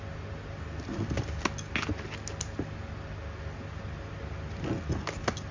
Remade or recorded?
recorded